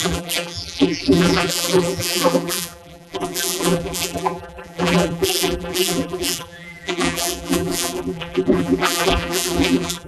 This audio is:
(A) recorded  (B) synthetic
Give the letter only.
B